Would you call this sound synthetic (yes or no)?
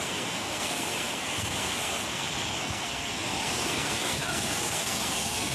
yes